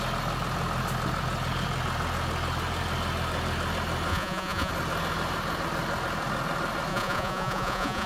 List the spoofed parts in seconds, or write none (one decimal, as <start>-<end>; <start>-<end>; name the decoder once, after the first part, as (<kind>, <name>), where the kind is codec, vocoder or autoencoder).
4.1-4.7 (vocoder, Vocos); 6.9-8.1